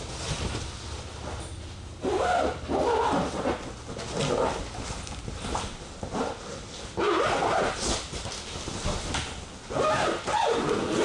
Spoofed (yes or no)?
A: no